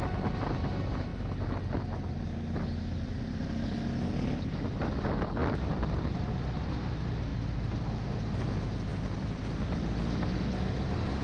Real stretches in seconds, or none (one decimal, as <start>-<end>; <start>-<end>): 0.0-11.2